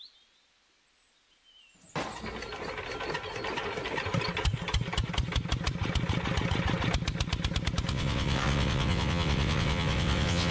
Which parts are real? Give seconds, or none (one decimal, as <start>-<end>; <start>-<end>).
0.0-7.9